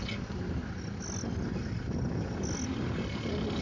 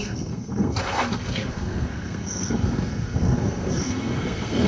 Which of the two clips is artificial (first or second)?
second